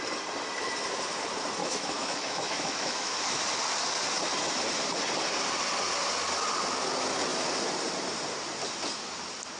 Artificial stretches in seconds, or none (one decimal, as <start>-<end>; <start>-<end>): 1.6-3.4